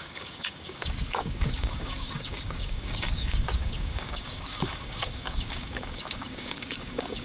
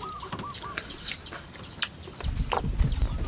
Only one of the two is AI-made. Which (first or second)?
first